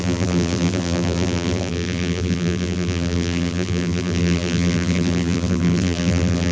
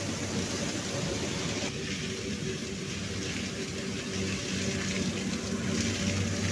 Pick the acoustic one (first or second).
second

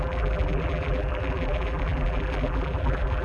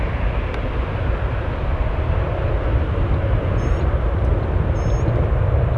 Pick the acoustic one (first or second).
second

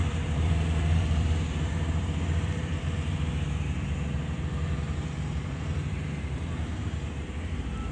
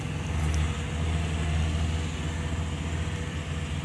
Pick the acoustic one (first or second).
second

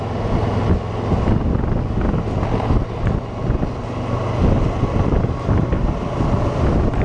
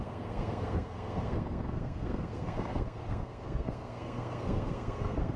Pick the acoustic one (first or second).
first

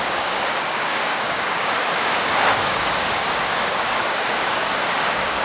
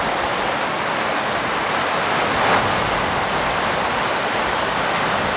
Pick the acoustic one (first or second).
second